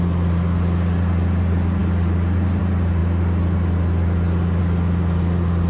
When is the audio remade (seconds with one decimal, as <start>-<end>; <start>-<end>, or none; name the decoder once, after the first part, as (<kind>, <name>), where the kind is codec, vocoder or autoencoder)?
none